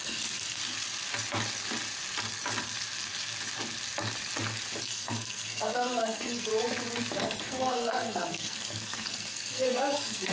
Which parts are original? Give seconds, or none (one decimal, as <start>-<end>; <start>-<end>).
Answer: 0.6-4.8; 6.5-7.2